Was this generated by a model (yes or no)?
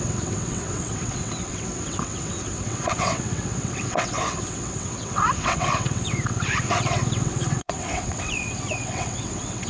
yes